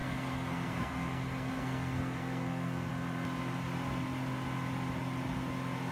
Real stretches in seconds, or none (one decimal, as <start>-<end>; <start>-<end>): 2.9-5.9